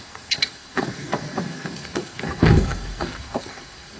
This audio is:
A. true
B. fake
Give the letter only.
B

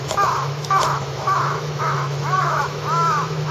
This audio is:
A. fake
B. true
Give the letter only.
A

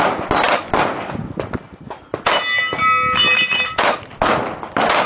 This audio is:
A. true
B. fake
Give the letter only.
A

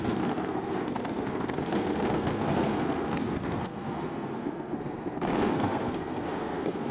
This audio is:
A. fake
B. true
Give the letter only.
A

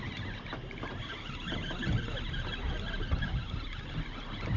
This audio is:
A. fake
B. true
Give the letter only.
B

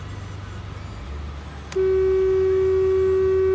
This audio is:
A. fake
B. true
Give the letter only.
B